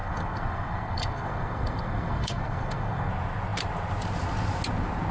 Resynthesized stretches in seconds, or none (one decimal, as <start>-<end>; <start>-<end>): 0.0-3.1